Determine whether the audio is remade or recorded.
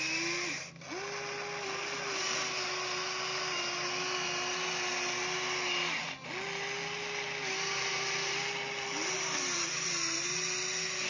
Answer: recorded